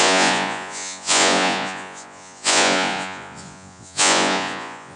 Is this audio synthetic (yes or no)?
yes